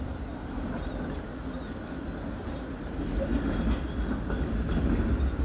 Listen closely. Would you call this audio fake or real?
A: real